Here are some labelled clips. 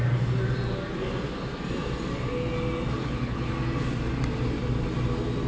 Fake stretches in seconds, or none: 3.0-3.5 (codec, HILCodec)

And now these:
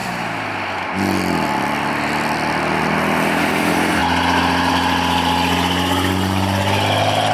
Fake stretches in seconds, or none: none